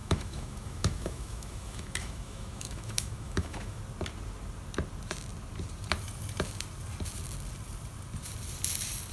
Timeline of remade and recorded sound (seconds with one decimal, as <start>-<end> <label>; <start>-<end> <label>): 0.0-3.8 remade; 3.8-9.1 recorded